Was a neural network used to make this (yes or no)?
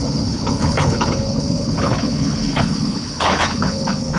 yes